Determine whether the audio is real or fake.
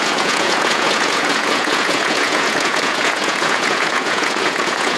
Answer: fake